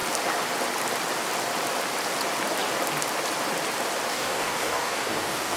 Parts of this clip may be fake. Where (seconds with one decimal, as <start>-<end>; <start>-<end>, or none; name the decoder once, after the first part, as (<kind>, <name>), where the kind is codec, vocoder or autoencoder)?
4.1-5.6 (codec, DAC)